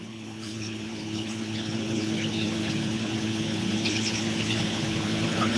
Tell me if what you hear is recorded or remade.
remade